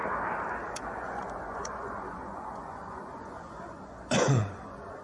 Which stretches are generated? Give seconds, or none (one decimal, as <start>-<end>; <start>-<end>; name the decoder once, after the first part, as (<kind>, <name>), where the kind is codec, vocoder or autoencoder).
0.7-5.0 (vocoder, Vocos)

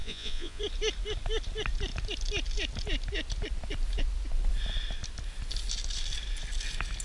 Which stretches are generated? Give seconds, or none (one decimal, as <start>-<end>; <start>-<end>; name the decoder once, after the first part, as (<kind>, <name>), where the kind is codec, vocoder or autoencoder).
0.0-0.6 (vocoder, Vocos)